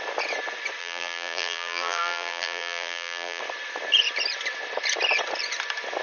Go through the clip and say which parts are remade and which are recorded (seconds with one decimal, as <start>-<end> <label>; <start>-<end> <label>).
0.0-0.8 recorded; 0.8-3.4 remade; 3.4-6.0 recorded